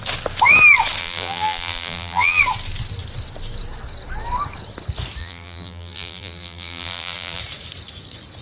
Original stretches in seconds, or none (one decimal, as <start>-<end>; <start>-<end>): 0.0-1.0; 2.4-5.2; 7.4-8.4

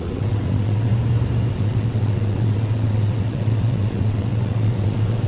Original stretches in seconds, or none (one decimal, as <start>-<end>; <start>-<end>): 0.9-1.5

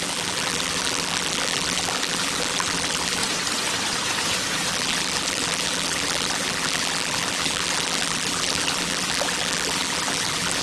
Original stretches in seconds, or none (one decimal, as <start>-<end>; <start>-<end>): 3.2-4.7

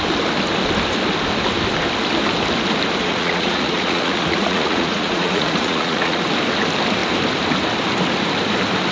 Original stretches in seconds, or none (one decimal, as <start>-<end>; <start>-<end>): 0.0-3.0; 6.2-8.9

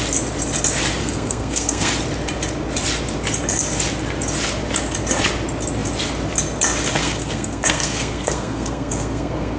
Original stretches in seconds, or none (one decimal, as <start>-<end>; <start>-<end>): 0.0-1.0; 1.9-7.0

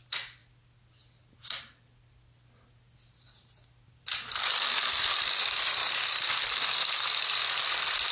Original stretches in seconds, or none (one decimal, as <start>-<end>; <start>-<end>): 0.0-8.1